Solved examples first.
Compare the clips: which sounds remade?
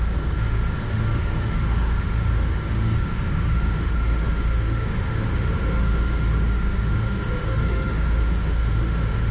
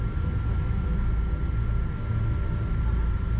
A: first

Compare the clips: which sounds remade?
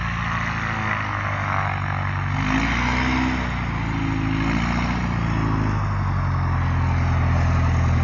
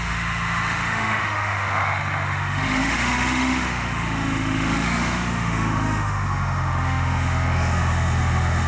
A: second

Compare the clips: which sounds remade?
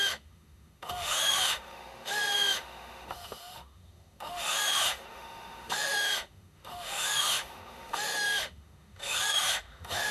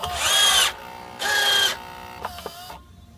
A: first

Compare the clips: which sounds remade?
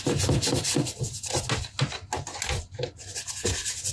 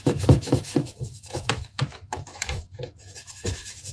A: second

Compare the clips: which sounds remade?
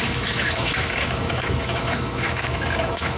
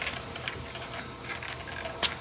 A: first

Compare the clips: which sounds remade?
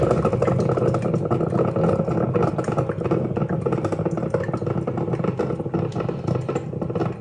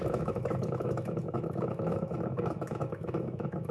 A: second